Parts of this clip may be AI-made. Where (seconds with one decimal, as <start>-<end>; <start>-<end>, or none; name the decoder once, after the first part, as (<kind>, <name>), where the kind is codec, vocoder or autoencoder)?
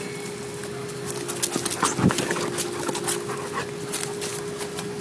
none